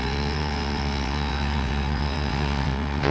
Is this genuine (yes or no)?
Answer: no